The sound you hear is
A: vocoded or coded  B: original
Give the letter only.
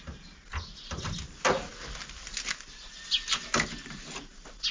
B